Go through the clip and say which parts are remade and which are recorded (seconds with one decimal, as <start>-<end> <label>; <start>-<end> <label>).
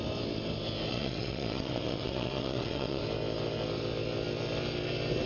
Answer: 0.0-0.9 recorded; 0.9-3.0 remade; 3.0-5.3 recorded